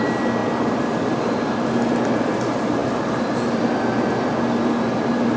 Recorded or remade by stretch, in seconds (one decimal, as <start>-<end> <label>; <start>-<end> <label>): 0.0-0.4 recorded; 0.4-1.7 remade; 1.7-2.8 recorded; 2.8-3.7 remade; 3.7-5.4 recorded